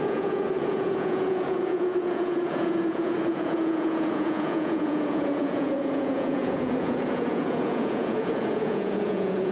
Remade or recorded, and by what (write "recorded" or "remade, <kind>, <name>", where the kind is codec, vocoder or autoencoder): remade, vocoder, Vocos